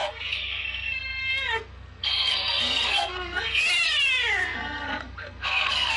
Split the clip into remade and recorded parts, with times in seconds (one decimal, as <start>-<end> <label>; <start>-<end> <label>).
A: 0.0-3.6 remade; 3.6-4.4 recorded; 4.4-6.0 remade